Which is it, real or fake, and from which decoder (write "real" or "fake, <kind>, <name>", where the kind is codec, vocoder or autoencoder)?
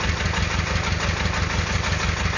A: real